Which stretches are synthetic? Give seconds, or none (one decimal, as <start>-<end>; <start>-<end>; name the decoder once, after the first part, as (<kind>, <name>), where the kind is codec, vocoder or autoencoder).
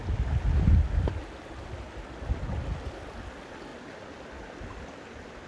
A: none